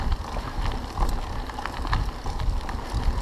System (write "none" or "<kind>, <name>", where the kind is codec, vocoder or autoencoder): none